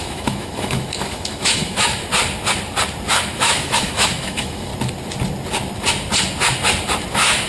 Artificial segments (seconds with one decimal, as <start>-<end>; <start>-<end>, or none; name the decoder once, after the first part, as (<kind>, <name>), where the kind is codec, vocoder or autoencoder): 0.0-2.0 (autoencoder, DAC-VAE); 3.1-4.7; 7.1-7.5

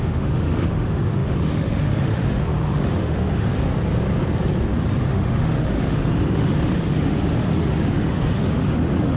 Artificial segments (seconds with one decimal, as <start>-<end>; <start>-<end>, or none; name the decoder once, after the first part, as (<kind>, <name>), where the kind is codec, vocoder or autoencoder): 0.0-3.5 (autoencoder, DAC-VAE); 5.1-9.2